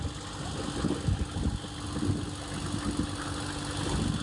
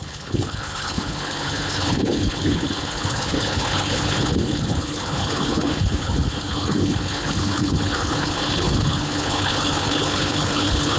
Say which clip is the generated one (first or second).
second